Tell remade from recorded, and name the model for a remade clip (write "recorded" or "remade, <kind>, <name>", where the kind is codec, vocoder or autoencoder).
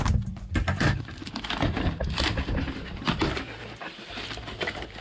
remade, vocoder, BigVGAN v2